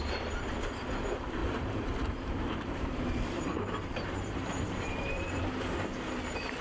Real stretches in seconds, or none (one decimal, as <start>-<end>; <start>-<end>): 0.0-1.4; 5.4-6.6